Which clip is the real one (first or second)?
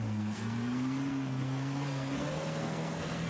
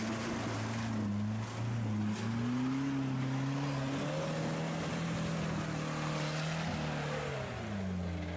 second